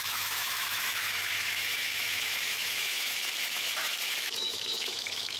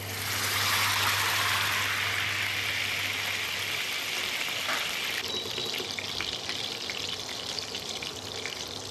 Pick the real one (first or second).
second